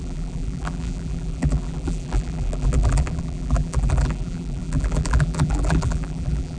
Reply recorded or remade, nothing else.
remade